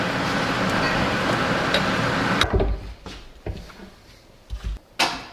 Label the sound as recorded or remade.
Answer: recorded